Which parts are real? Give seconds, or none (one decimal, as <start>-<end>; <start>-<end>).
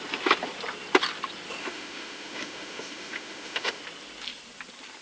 0.0-1.6; 3.8-5.0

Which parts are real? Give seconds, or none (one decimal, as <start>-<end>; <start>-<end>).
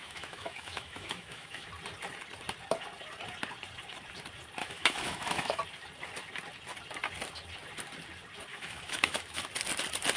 1.7-4.6; 5.6-8.5; 9.4-10.2